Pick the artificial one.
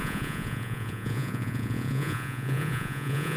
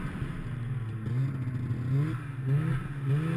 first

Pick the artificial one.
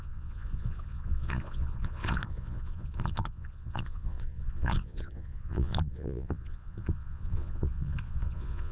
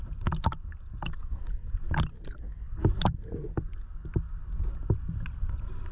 first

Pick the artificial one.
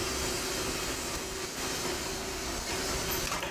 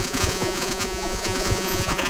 second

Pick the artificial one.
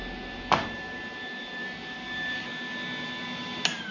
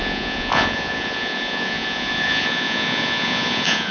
second